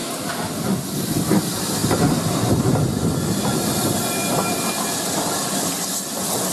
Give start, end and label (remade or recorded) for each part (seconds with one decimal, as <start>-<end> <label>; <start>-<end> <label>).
0.0-6.5 recorded